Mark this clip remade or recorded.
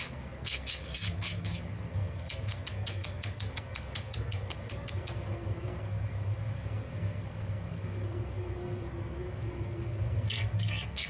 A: remade